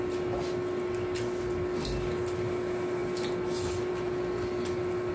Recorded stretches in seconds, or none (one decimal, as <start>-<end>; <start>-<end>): 0.0-5.1